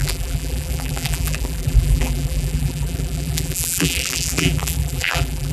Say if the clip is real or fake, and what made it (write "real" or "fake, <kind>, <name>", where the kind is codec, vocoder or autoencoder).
fake, vocoder, BigVGAN v2